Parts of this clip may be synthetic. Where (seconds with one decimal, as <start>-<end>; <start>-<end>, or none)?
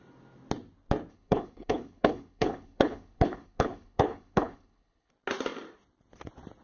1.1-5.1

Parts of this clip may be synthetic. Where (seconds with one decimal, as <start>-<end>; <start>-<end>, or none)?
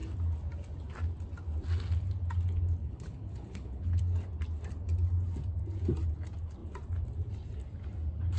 2.8-4.0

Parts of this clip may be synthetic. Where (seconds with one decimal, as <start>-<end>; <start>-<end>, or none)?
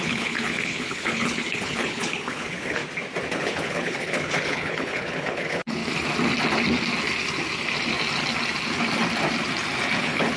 0.0-2.8; 3.3-5.8; 10.0-10.4